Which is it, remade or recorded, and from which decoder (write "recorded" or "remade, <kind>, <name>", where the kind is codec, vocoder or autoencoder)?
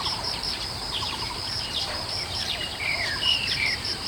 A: remade, vocoder, BigVGAN v2